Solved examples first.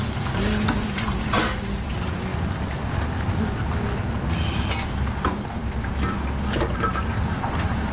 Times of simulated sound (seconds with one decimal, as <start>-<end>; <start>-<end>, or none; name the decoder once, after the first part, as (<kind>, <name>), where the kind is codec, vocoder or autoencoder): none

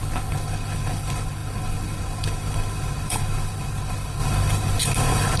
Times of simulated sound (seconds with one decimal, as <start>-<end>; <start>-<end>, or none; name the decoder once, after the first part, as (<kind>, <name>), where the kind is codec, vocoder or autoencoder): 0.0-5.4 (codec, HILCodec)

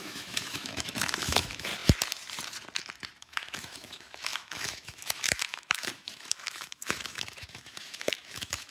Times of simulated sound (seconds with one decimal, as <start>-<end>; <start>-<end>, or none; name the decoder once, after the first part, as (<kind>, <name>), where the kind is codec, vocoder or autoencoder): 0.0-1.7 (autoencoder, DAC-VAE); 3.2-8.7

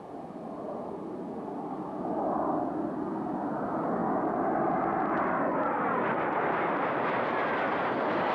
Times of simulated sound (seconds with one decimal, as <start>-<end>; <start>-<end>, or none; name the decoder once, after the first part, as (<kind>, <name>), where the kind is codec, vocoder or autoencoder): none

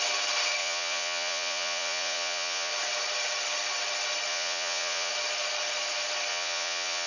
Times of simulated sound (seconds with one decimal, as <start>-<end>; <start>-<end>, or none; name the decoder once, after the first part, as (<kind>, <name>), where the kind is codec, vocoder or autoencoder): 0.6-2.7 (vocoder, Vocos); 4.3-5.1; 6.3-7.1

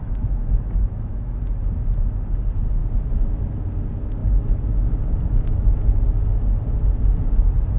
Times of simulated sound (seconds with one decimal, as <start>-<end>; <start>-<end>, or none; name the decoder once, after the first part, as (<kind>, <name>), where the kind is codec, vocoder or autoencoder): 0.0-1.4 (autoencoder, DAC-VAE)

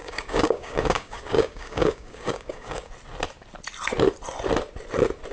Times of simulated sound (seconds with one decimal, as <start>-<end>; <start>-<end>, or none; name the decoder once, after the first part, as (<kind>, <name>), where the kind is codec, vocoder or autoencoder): 0.0-2.9 (codec, DAC)